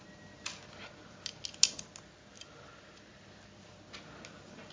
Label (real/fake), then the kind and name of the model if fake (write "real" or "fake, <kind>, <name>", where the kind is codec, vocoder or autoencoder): real